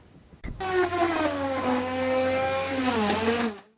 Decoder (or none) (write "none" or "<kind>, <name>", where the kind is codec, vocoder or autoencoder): codec, DAC